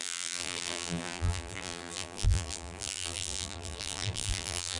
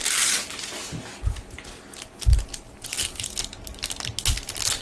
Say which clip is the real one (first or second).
second